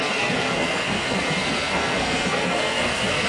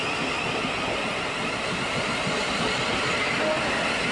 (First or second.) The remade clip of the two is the first